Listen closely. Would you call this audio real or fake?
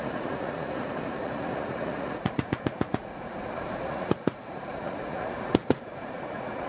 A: fake